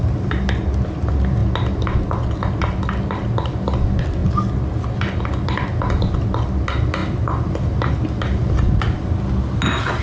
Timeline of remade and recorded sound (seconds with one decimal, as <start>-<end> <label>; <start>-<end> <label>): 0.0-10.0 recorded